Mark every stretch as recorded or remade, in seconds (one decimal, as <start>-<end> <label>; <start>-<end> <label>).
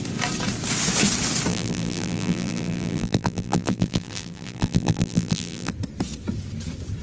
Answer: 0.0-1.5 recorded; 1.5-5.7 remade; 5.7-7.0 recorded